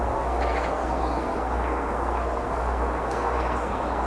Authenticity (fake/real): fake